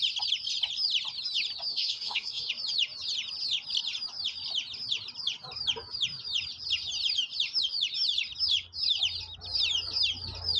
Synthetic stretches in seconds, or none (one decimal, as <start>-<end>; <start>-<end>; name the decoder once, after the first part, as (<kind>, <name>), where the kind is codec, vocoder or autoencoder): 1.7-2.5 (codec, SNAC)